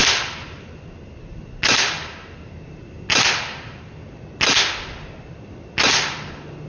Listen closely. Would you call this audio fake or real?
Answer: real